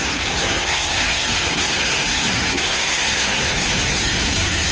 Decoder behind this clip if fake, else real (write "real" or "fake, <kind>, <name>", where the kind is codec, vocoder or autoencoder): fake, codec, SNAC